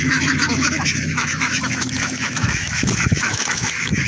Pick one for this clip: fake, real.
fake